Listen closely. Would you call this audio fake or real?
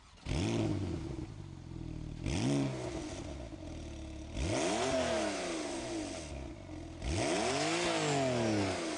real